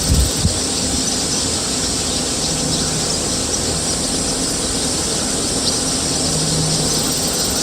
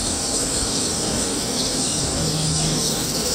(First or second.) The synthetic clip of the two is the second